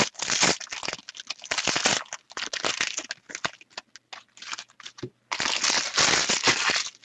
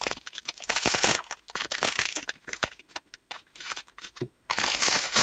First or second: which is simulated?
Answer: second